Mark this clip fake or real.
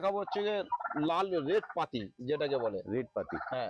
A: real